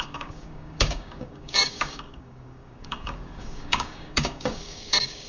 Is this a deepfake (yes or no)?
yes